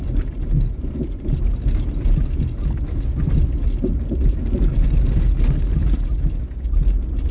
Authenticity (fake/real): real